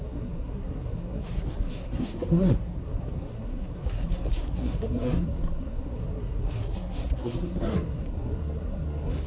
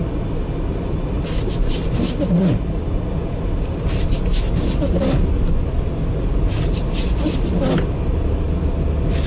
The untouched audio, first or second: second